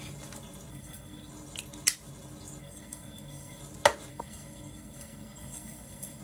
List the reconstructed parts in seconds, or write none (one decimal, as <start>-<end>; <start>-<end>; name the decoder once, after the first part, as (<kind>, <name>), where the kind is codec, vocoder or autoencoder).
0.7-1.3 (codec, SNAC); 2.6-3.6; 4.1-6.2